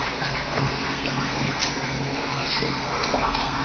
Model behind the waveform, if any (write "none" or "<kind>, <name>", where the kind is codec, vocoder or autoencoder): codec, SNAC